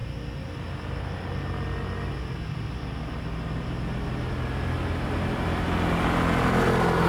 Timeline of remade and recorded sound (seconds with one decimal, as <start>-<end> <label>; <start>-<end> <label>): 0.0-7.1 recorded